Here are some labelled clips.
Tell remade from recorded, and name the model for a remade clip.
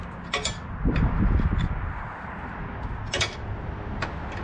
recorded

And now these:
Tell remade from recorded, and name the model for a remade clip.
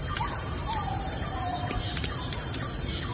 remade, vocoder, BigVGAN v2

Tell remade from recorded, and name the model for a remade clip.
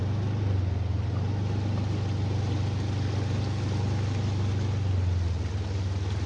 recorded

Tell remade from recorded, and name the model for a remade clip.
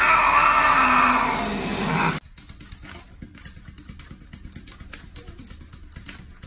recorded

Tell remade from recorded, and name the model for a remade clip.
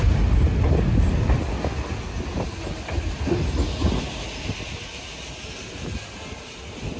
recorded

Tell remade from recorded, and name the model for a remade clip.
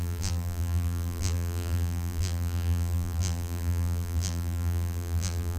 remade, vocoder, BigVGAN v2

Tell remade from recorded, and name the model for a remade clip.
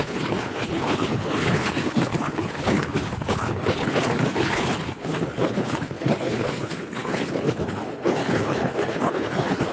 remade, codec, HILCodec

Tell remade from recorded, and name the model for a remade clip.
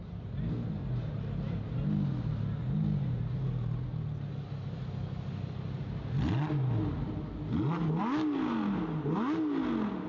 recorded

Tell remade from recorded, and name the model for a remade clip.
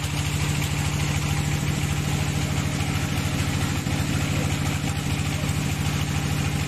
recorded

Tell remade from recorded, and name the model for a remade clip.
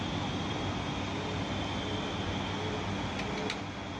recorded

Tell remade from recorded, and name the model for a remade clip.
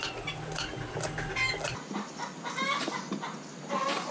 recorded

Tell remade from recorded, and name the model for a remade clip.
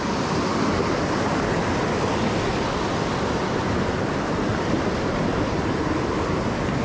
recorded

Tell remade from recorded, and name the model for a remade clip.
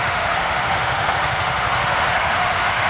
remade, autoencoder, DAC-VAE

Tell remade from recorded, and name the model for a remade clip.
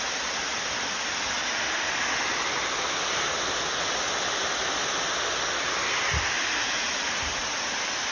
recorded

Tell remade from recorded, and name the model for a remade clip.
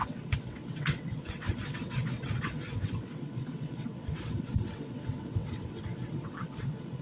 remade, vocoder, WaveNeXt